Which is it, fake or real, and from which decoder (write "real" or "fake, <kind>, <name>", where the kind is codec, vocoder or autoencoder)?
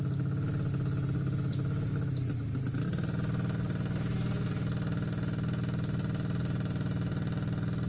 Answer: real